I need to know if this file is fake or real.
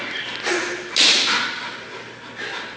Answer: real